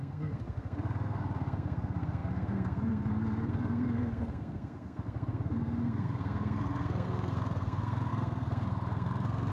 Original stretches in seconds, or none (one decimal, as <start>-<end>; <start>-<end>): none